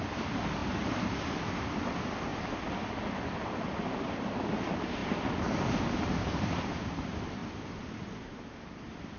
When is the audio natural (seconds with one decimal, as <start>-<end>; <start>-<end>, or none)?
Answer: 0.0-9.2